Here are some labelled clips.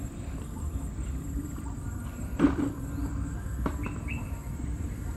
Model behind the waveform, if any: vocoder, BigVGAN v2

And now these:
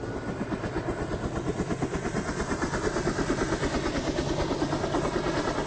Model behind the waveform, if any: none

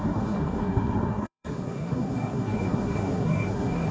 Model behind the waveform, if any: codec, SNAC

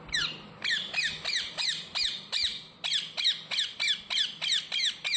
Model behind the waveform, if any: none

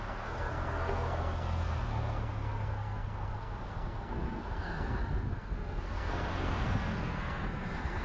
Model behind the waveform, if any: codec, SNAC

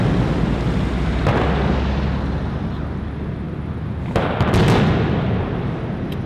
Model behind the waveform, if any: none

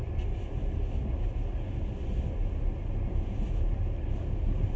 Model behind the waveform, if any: none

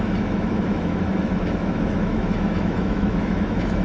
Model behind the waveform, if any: autoencoder, DAC-VAE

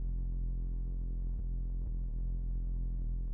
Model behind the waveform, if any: codec, DAC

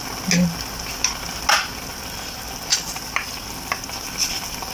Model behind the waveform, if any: none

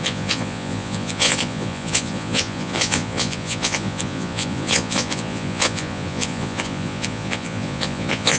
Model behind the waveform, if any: vocoder, Vocos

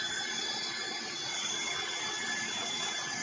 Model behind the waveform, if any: vocoder, WaveNeXt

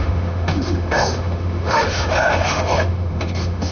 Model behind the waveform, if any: autoencoder, DAC-VAE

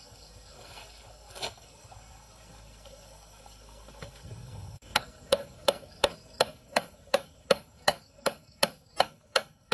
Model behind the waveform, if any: codec, SNAC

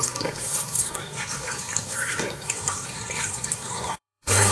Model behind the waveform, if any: codec, SNAC